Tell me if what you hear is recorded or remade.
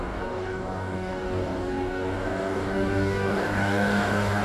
remade